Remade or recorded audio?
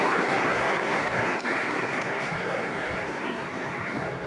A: remade